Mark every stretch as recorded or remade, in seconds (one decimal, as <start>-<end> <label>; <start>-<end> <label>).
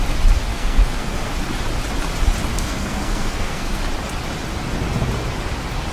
0.0-0.5 recorded; 0.5-1.3 remade; 1.3-2.5 recorded; 2.5-3.8 remade; 3.8-5.9 recorded